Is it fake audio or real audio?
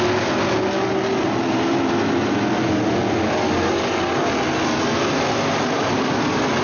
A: real